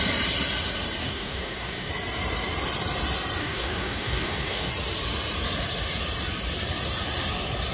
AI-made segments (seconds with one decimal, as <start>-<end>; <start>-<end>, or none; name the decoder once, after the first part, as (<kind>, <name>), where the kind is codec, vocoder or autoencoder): 1.0-1.9 (codec, DAC); 3.4-4.7